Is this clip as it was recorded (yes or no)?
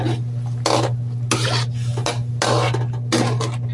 yes